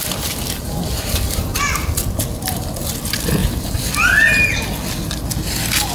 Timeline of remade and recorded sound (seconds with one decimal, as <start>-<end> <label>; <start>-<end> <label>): 0.0-3.4 recorded; 3.4-3.9 remade; 3.9-5.9 recorded